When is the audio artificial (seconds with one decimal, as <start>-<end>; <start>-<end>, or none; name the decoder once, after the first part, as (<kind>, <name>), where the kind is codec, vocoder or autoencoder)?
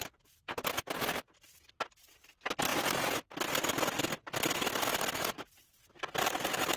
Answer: none